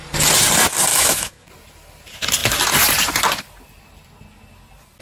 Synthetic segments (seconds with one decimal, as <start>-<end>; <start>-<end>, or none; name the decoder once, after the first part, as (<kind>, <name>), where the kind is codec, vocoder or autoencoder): 0.9-1.5 (autoencoder, DAC-VAE)